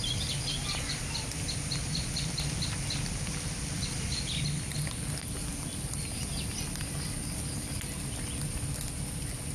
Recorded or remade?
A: recorded